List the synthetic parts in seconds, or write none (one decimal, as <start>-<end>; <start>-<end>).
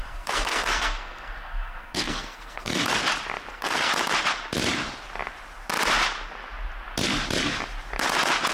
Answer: 0.0-2.8; 3.5-3.9